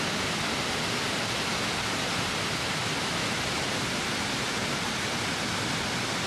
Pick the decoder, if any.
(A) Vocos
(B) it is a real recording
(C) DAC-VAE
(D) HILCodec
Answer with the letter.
B